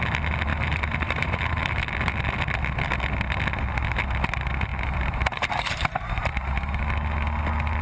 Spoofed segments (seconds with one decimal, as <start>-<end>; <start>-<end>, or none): 0.5-1.8; 4.7-6.8